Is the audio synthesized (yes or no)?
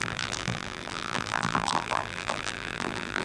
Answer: yes